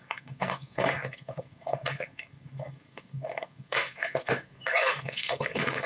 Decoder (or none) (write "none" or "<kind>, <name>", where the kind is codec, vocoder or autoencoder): codec, SNAC